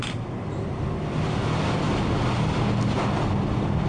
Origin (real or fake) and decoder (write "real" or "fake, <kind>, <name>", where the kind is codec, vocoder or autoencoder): real